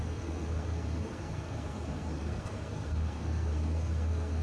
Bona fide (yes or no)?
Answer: no